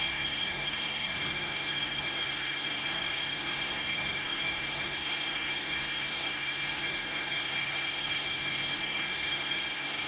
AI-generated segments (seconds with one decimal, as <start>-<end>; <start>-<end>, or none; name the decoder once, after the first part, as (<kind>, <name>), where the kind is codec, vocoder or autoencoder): 0.0-10.1 (codec, SNAC)